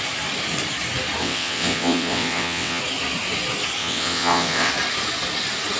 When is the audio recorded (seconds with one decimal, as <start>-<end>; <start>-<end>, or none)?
0.0-1.2; 2.8-3.8; 4.7-5.8